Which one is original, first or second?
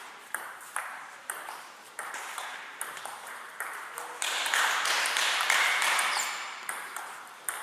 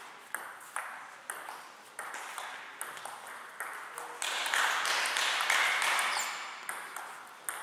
second